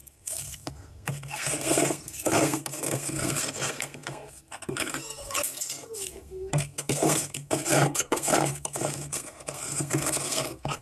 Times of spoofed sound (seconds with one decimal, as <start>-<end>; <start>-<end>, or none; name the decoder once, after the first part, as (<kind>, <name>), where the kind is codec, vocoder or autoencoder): 0.0-10.8 (codec, SNAC)